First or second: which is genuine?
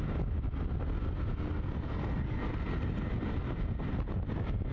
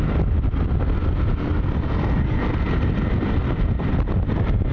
first